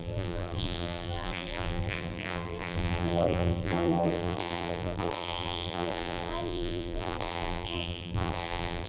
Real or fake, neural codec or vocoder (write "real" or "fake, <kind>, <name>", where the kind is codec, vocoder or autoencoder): fake, vocoder, BigVGAN v2